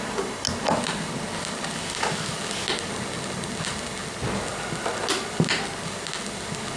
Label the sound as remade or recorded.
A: recorded